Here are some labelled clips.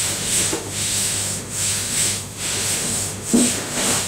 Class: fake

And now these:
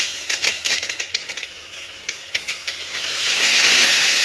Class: fake